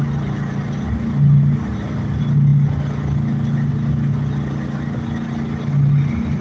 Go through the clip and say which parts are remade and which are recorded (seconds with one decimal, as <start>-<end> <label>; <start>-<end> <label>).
0.0-6.4 recorded